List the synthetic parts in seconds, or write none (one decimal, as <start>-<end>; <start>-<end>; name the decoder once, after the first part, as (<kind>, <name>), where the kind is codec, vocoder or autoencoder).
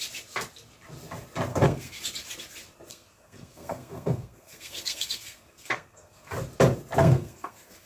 1.5-2.0 (codec, SNAC); 2.9-6.3; 7.0-7.9